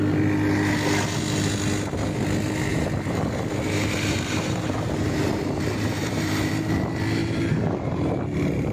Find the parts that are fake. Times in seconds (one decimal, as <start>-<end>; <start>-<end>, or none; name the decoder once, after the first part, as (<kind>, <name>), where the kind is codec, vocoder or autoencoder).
2.7-6.5 (vocoder, BigVGAN v2); 7.2-8.2